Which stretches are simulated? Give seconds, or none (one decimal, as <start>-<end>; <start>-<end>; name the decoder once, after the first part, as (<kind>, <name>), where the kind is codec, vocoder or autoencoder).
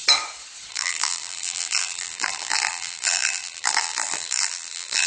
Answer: 0.7-5.1 (vocoder, BigVGAN v2)